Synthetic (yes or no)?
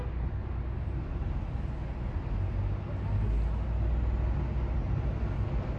no